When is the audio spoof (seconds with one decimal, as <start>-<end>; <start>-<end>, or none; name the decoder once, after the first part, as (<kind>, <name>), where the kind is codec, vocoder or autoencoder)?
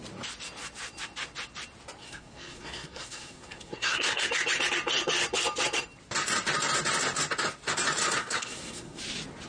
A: 2.0-4.3 (codec, SNAC); 8.2-9.0